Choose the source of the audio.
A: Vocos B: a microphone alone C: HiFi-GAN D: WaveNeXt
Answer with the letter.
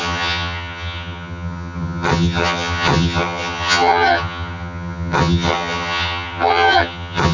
C